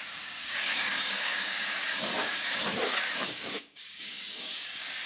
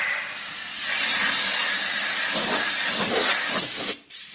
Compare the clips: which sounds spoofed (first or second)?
first